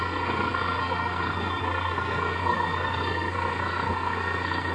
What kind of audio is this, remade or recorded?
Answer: remade